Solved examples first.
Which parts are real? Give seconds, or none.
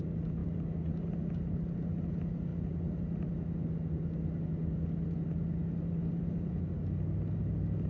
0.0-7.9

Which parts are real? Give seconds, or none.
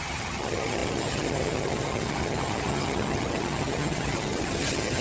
none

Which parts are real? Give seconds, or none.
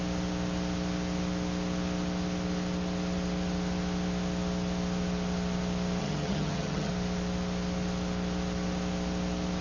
0.0-6.0; 6.9-9.6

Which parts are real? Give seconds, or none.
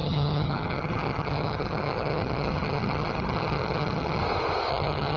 4.2-4.7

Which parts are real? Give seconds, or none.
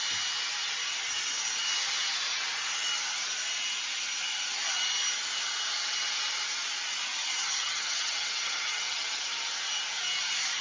0.0-7.3; 9.5-10.6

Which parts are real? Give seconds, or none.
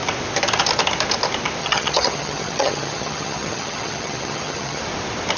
0.0-1.6; 4.8-5.4